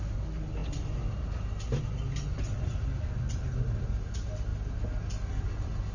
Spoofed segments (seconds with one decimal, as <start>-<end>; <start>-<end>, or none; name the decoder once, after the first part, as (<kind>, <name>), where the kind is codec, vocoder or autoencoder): none